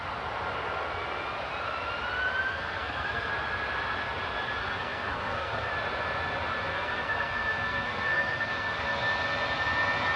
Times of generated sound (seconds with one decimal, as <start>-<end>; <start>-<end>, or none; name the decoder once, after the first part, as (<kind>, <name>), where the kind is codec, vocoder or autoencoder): 2.5-3.3 (codec, SNAC); 4.6-5.7; 6.7-8.8